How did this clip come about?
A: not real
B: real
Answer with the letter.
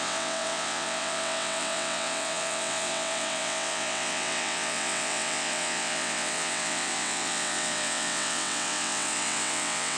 A